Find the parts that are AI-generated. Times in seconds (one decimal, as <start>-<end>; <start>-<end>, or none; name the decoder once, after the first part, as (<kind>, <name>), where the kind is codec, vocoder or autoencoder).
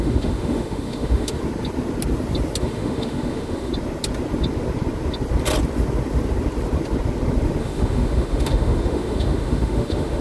0.0-1.4 (autoencoder, DAC-VAE); 2.6-3.7; 7.6-10.2